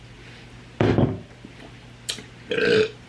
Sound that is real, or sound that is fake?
real